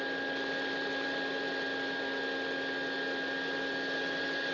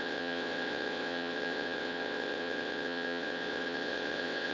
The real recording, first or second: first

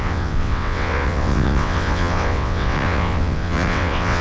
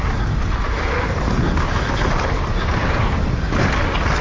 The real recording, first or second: second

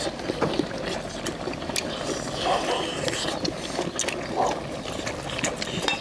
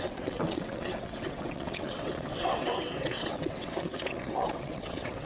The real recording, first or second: first